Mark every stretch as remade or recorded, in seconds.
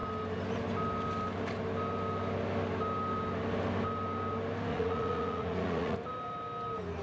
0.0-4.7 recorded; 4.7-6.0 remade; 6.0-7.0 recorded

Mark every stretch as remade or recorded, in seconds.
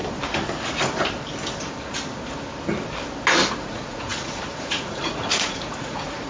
0.0-3.5 recorded; 3.5-6.3 remade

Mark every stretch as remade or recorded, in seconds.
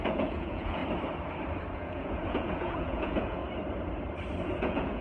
0.0-0.8 remade; 0.8-1.7 recorded; 1.7-3.4 remade; 3.4-4.6 recorded; 4.6-5.0 remade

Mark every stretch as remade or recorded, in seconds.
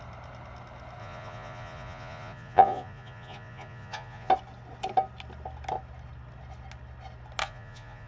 0.0-1.0 recorded; 1.0-4.3 remade; 4.3-7.4 recorded; 7.4-8.1 remade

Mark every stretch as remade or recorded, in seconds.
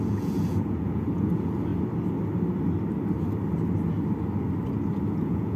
0.0-1.7 remade; 1.7-5.1 recorded; 5.1-5.6 remade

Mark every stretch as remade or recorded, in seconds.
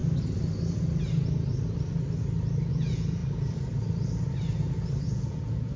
0.0-2.7 recorded; 2.7-3.2 remade; 3.2-5.0 recorded; 5.0-5.8 remade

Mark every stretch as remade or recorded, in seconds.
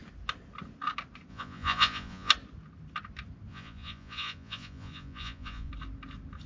0.0-1.3 recorded; 1.3-2.3 remade; 2.3-3.5 recorded; 3.5-5.7 remade; 5.7-6.5 recorded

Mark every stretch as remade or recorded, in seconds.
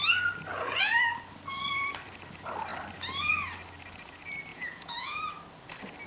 0.0-0.5 recorded; 0.5-1.0 remade; 1.0-4.5 recorded; 4.5-5.2 remade; 5.2-6.1 recorded